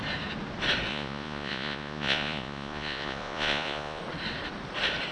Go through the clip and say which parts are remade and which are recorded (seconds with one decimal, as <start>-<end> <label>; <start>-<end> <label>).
0.0-0.9 recorded; 0.9-4.0 remade; 4.0-5.1 recorded